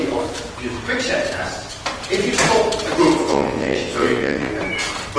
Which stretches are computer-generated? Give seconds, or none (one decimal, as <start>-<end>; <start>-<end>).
3.2-4.5